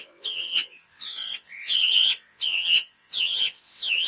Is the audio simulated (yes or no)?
yes